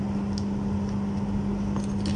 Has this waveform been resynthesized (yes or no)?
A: no